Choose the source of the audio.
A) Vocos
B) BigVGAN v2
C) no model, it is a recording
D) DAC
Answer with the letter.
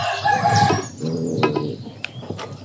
C